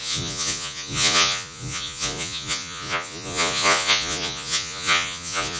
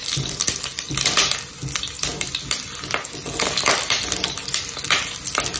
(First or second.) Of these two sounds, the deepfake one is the first